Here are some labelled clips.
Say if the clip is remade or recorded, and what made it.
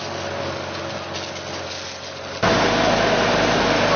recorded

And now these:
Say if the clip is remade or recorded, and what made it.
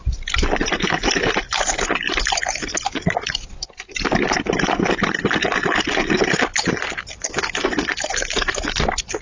recorded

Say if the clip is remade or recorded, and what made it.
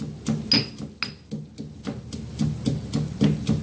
recorded